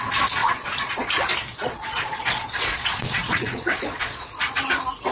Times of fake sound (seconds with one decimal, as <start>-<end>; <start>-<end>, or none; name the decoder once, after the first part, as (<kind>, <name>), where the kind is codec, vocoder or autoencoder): 0.4-1.1 (vocoder, Vocos); 1.5-4.6